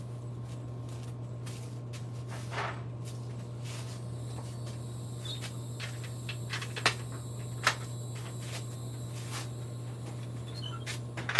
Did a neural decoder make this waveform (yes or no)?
no